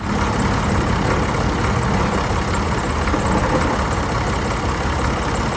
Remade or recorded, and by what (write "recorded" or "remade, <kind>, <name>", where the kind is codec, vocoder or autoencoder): recorded